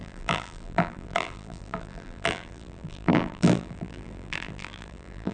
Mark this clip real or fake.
fake